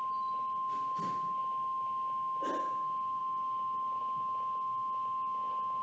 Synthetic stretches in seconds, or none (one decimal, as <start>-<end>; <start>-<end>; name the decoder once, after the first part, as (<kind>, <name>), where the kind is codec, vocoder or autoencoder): none